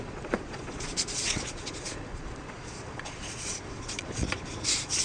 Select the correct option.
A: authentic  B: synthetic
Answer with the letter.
B